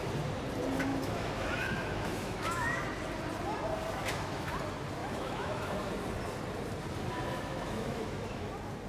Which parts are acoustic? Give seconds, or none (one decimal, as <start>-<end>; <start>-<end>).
0.0-0.9; 2.8-4.0; 4.5-5.0; 5.9-7.3; 8.5-8.9